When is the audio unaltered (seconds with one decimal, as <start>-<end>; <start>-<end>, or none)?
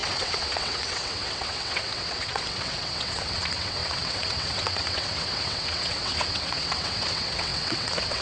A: none